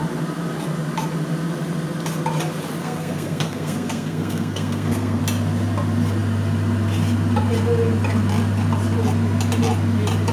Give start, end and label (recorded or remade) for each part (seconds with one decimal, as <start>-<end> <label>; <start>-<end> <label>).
0.0-2.8 recorded; 2.8-5.2 remade; 5.2-10.3 recorded